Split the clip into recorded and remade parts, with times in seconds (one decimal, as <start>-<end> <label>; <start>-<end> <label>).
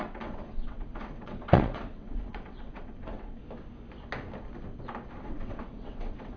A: 0.0-3.4 remade; 3.4-5.2 recorded; 5.2-6.4 remade